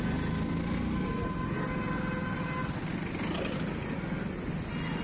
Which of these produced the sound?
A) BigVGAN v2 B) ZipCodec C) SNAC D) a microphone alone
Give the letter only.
D